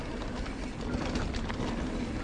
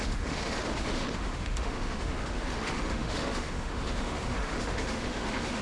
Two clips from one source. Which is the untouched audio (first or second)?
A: first